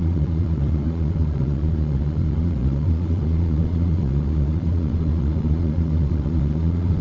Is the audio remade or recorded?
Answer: remade